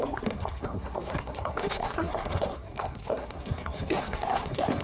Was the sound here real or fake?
fake